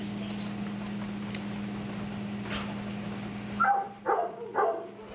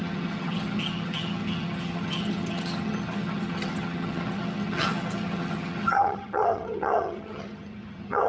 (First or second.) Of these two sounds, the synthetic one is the second